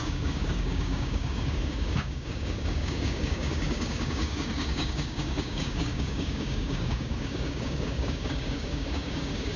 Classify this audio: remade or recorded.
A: remade